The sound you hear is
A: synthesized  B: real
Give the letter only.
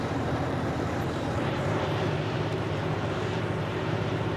A